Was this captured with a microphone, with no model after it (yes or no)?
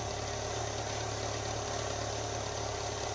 yes